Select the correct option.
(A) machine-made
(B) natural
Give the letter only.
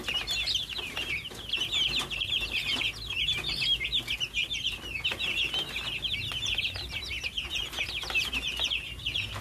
B